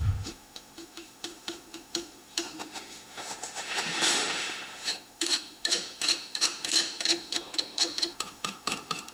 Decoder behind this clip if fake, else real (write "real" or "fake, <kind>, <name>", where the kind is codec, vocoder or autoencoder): fake, autoencoder, DAC-VAE